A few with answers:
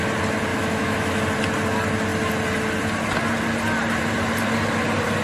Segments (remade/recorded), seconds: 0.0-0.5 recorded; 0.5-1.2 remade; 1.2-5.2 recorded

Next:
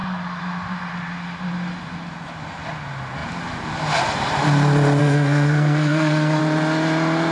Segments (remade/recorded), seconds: 0.0-5.0 recorded; 5.0-6.4 remade; 6.4-7.3 recorded

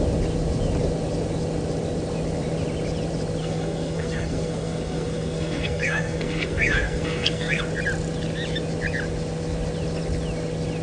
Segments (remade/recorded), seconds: 0.0-3.4 recorded; 3.4-7.6 remade; 7.6-10.8 recorded

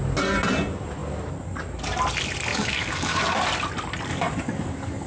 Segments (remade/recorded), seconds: 0.0-2.5 recorded; 2.5-3.2 remade; 3.2-4.1 recorded; 4.1-5.1 remade

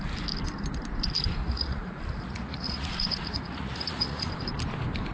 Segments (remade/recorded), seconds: 0.0-1.4 recorded; 1.4-4.3 remade; 4.3-5.1 recorded

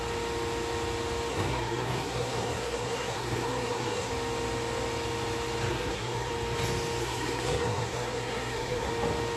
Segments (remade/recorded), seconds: 0.0-1.3 recorded; 1.3-4.1 remade; 4.1-5.7 recorded; 5.7-6.3 remade; 6.3-7.0 recorded; 7.0-8.9 remade; 8.9-9.4 recorded

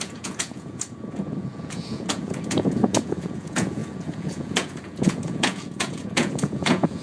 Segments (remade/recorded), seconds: 0.0-7.0 remade